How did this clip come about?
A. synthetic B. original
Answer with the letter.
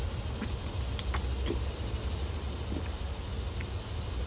B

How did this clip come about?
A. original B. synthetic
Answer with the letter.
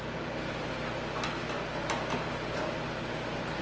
A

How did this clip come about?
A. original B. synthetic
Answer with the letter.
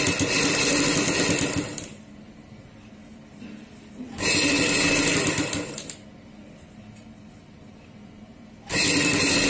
A